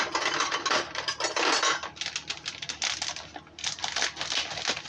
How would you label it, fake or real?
real